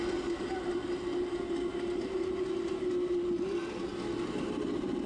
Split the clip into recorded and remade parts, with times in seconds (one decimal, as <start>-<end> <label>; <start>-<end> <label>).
0.0-5.1 recorded